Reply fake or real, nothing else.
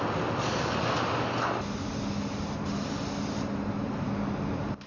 real